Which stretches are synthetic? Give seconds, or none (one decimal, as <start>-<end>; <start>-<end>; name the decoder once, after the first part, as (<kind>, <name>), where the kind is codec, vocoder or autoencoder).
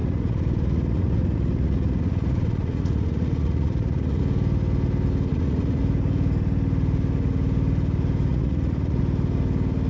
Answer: 0.0-4.2 (vocoder, Vocos); 5.3-5.8; 8.3-9.0